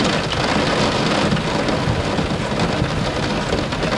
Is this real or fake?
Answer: real